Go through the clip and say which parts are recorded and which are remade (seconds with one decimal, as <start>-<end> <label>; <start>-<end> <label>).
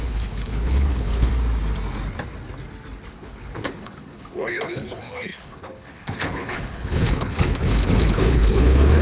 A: 0.0-1.3 remade; 1.3-3.1 recorded; 3.1-9.0 remade